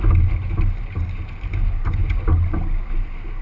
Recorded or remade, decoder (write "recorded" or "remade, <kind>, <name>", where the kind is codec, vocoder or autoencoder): recorded